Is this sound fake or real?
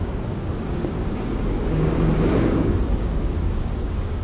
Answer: fake